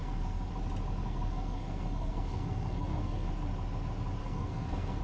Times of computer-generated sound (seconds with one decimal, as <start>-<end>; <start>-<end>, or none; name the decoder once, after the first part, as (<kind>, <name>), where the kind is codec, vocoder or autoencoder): 0.0-0.5 (codec, SNAC); 1.0-3.3; 4.2-5.0